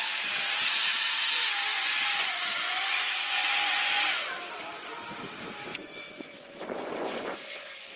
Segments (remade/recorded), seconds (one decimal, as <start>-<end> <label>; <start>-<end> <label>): 0.0-1.7 recorded; 1.7-4.3 remade; 4.3-5.7 recorded; 5.7-8.0 remade